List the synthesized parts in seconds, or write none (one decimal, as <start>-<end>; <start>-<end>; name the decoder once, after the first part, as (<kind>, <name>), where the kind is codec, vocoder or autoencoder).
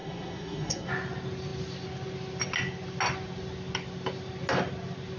0.0-0.9 (codec, SNAC)